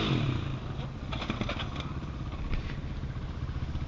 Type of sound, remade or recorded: recorded